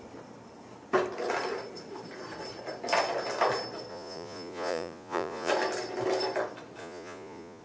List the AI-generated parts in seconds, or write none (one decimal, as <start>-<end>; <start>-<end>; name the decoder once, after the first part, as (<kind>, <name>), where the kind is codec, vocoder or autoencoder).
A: 3.9-5.5 (vocoder, Vocos); 6.8-7.6